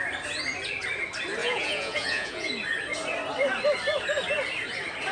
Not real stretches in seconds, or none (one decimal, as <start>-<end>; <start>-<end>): 1.4-2.5